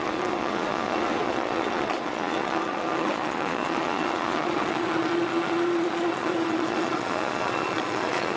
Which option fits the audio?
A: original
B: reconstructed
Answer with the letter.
B